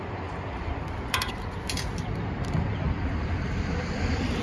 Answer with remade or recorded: remade